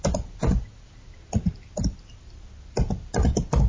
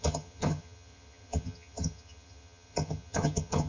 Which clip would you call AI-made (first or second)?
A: second